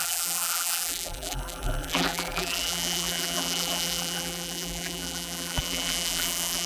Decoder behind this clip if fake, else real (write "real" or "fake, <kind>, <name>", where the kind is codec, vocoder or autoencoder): fake, vocoder, BigVGAN v2